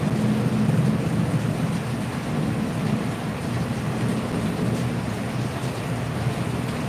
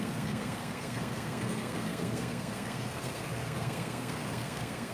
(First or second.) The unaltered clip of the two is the first